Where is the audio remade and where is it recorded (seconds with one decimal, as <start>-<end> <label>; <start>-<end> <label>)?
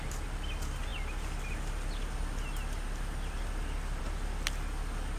0.0-5.2 recorded